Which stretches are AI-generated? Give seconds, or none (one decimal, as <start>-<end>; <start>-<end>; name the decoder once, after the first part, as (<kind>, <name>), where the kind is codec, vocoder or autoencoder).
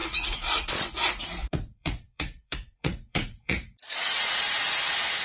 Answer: 0.0-0.7 (vocoder, Vocos); 1.4-4.5